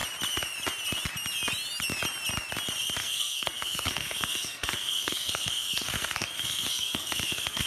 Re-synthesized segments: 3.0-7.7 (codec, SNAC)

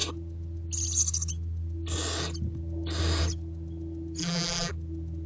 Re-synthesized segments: 4.2-4.7 (vocoder, BigVGAN v2)